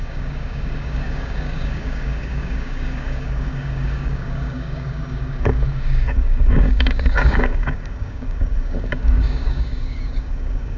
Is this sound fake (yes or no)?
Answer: yes